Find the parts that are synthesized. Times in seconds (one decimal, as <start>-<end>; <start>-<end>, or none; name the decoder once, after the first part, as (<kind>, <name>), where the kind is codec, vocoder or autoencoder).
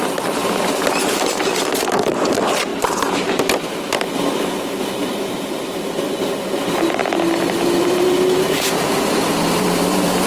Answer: 0.0-0.4 (vocoder, BigVGAN v2); 1.0-2.7; 4.3-7.0; 7.5-10.3